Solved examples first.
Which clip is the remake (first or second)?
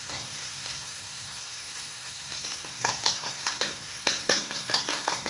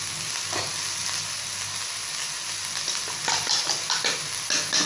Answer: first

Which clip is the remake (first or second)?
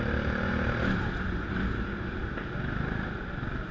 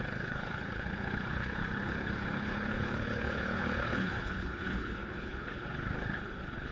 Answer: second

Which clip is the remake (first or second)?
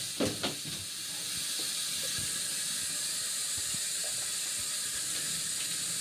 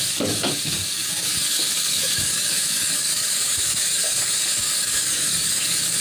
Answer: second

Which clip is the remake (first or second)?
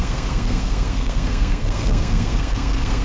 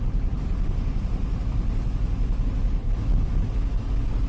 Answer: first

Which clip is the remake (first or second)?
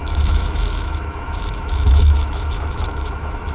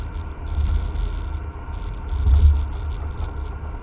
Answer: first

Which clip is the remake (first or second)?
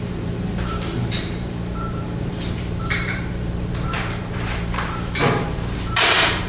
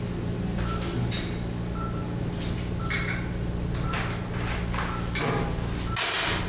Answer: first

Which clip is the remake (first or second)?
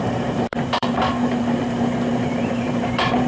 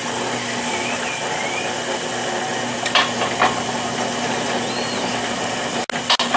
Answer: first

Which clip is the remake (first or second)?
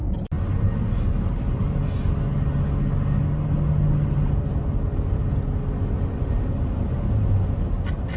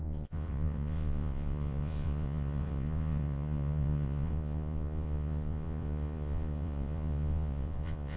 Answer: second